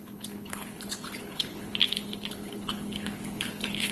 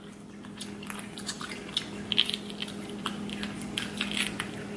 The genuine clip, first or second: second